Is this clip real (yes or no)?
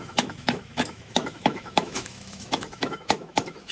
no